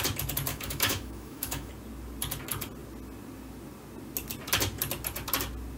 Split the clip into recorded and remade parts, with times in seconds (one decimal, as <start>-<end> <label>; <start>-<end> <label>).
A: 0.0-0.5 recorded; 0.5-1.7 remade; 1.7-5.8 recorded